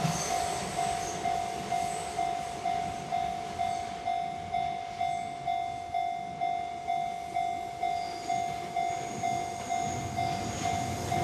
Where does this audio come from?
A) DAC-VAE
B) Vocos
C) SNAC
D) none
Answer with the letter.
D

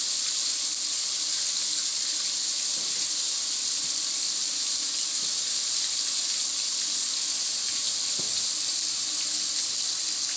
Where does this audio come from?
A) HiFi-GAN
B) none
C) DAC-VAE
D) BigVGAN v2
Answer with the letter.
B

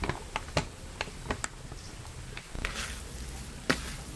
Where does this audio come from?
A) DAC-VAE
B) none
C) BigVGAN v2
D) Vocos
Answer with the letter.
B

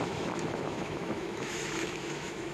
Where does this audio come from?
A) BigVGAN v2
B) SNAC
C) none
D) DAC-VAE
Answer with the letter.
D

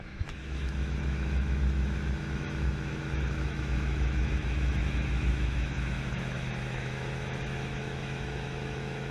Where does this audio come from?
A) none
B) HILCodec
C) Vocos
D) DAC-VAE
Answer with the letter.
D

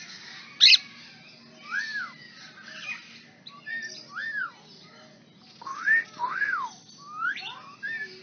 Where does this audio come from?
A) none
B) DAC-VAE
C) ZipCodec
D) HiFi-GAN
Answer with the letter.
A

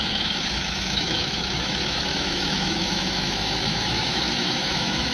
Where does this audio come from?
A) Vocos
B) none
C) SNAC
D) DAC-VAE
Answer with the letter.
D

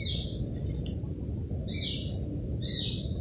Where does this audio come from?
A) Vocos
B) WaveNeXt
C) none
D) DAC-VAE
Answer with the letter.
C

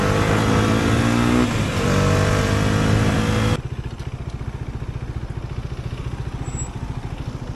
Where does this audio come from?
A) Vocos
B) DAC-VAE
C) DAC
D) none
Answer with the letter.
D